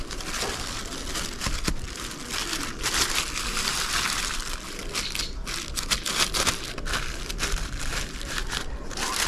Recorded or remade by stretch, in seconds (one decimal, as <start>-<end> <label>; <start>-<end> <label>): 0.0-0.8 remade; 0.8-1.4 recorded; 1.4-2.4 remade; 2.4-3.4 recorded; 3.4-4.8 remade; 4.8-5.7 recorded; 5.7-9.3 remade